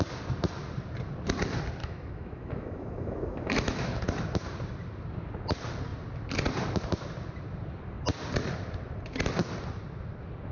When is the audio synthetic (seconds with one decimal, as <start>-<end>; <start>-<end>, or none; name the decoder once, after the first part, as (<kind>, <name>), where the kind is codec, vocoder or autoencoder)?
1.8-4.0 (autoencoder, DAC-VAE)